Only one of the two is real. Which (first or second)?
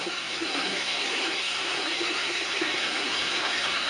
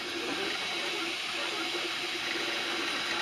second